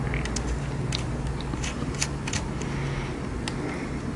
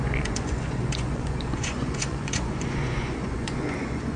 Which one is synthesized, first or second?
second